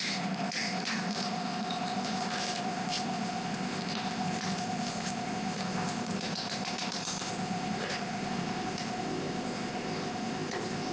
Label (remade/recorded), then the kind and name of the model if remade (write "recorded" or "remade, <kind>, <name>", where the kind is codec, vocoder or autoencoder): remade, codec, ZipCodec